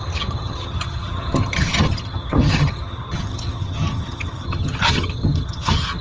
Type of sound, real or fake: fake